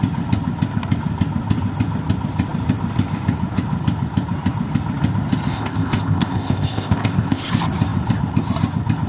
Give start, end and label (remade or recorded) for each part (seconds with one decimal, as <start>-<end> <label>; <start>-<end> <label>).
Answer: 0.0-5.5 recorded; 5.5-7.5 remade; 7.5-9.1 recorded